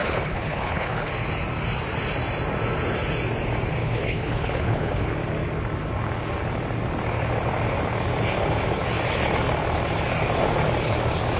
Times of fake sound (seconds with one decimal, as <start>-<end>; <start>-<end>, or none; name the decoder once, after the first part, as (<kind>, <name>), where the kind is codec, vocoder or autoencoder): 0.0-1.1 (codec, HILCodec); 3.8-5.1